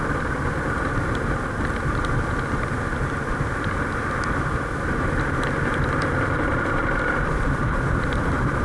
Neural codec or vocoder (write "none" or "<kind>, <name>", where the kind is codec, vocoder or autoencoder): none